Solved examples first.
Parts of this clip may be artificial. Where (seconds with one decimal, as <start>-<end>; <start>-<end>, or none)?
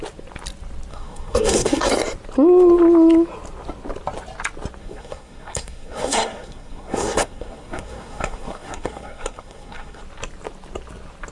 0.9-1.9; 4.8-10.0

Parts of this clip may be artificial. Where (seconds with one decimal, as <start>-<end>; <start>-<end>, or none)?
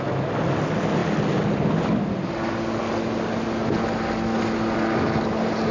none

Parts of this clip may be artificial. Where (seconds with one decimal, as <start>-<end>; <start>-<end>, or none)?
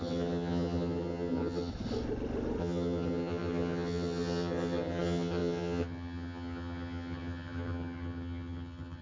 0.0-1.7; 2.6-9.0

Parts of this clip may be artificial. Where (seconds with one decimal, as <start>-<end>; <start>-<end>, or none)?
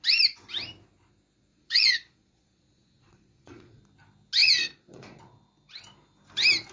1.5-3.8; 4.4-5.2